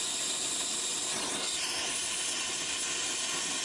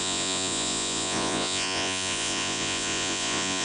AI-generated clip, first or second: second